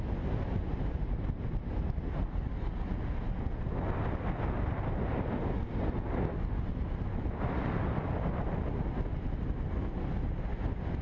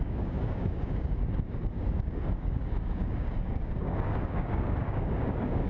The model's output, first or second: second